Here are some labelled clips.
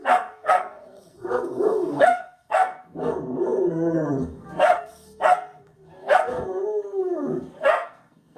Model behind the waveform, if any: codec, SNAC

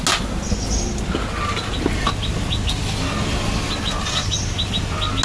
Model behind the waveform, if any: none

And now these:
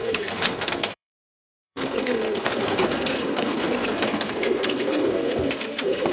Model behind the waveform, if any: codec, SNAC